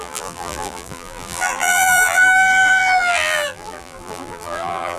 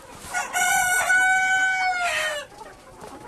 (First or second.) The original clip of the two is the second